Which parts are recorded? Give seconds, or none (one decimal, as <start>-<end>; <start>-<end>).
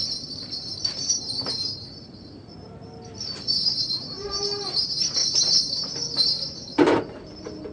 0.0-7.7